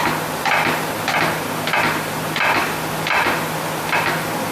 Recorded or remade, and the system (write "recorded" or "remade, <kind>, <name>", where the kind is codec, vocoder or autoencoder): remade, vocoder, BigVGAN v2